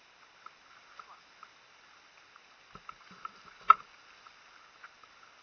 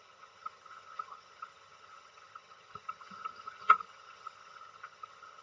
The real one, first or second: first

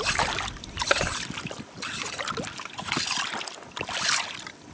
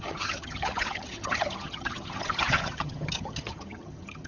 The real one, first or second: first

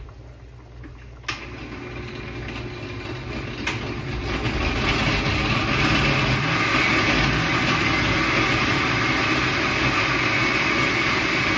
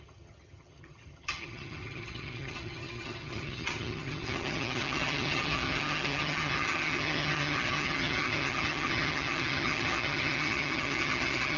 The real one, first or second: first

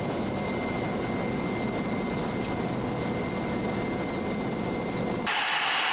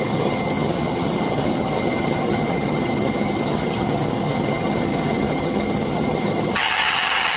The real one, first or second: first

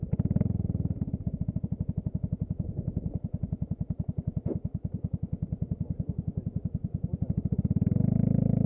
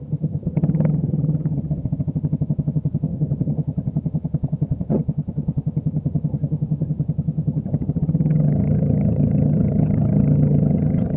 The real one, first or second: first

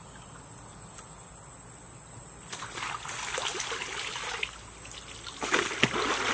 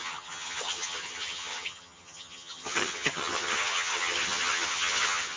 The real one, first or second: first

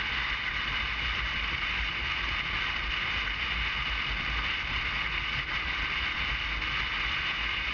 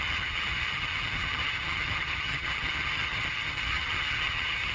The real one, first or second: first